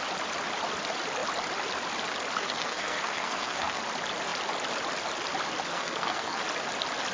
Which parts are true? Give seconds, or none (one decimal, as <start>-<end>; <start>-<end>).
0.0-2.4; 3.8-5.7; 6.4-7.1